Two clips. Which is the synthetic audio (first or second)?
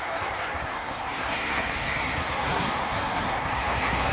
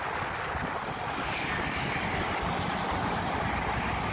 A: first